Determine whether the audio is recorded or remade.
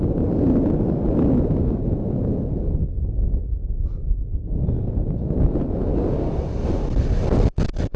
recorded